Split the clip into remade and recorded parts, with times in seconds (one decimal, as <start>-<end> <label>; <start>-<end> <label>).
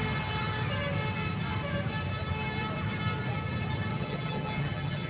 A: 0.0-3.9 recorded; 3.9-5.1 remade